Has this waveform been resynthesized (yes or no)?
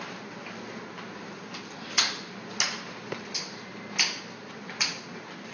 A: no